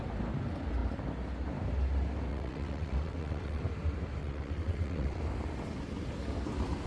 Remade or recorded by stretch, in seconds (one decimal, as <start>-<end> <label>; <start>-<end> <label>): 0.0-2.3 recorded; 2.3-3.6 remade; 3.6-4.2 recorded; 4.2-5.2 remade; 5.2-6.9 recorded